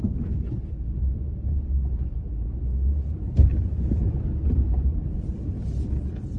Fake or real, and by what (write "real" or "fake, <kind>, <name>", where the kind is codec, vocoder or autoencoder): fake, vocoder, BigVGAN v2